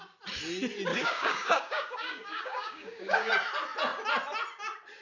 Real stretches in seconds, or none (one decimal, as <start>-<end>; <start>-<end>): 0.0-0.9; 3.3-5.0